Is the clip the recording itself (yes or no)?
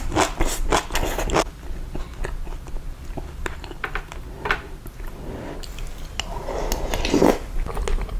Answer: yes